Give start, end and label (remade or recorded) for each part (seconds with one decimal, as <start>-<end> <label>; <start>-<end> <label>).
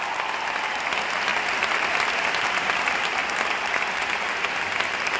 0.0-5.2 recorded